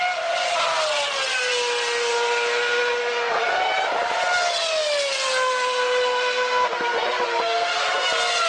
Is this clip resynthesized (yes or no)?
no